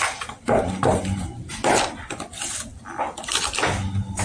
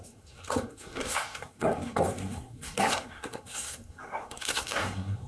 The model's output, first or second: second